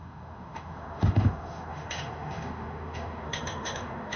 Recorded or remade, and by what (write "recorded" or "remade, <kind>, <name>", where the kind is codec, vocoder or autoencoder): remade, autoencoder, DAC-VAE